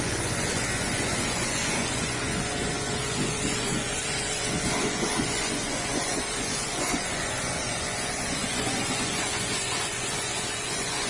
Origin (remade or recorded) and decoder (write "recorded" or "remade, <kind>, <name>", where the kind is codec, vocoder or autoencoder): remade, vocoder, Vocos